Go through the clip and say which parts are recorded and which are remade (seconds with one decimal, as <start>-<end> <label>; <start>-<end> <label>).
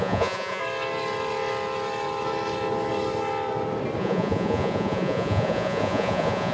0.0-0.6 remade; 0.6-4.0 recorded; 4.0-6.5 remade